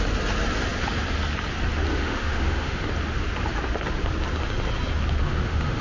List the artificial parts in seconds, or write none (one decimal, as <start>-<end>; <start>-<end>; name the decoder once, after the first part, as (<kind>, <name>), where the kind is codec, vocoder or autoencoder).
1.9-2.9 (autoencoder, DAC-VAE); 5.2-5.8